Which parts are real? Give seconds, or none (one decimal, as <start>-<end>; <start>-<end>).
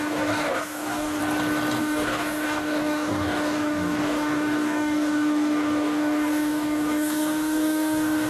1.2-1.8